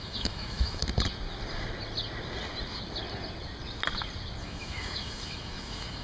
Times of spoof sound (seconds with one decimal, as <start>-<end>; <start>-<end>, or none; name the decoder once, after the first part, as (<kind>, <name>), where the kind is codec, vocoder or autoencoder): 0.0-0.8 (autoencoder, DAC-VAE); 4.4-6.0